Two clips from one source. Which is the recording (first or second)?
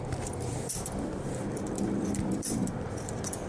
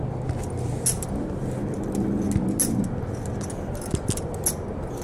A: second